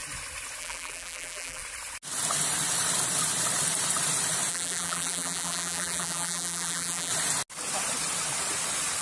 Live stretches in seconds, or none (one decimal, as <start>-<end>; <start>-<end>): 0.0-0.6; 1.6-4.5; 7.1-9.0